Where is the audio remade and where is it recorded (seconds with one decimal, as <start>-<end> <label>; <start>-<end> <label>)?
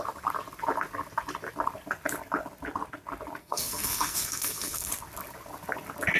0.0-3.4 recorded; 3.4-4.9 remade; 4.9-6.2 recorded